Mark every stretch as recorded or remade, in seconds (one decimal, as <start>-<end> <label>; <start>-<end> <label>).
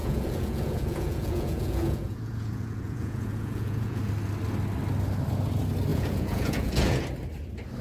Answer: 0.0-4.1 remade; 4.1-5.9 recorded; 5.9-7.0 remade; 7.0-7.8 recorded